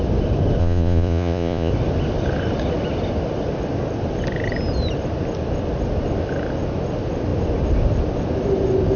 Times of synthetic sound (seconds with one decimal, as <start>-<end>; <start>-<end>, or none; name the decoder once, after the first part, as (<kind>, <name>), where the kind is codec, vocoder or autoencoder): 0.6-1.7 (vocoder, Vocos)